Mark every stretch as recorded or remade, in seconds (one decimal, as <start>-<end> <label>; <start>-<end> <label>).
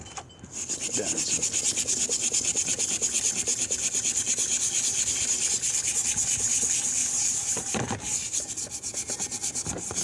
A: 0.0-7.0 recorded; 7.0-8.5 remade; 8.5-10.0 recorded